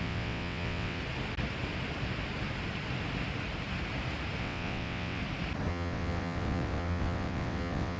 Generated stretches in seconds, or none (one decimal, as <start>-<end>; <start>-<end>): 0.0-1.0; 4.4-5.2; 5.7-8.0